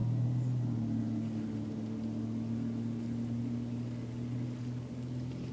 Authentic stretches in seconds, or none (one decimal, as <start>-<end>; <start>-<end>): 0.0-5.5

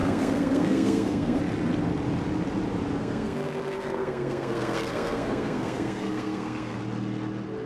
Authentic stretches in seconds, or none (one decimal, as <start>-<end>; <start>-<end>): 1.4-3.0; 6.8-7.7

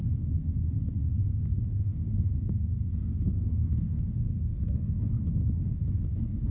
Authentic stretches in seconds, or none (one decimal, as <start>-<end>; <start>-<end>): 0.0-1.3; 4.9-6.5

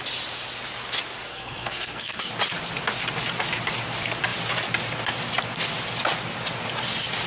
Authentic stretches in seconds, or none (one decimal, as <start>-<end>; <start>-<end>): 0.0-1.3; 2.3-7.3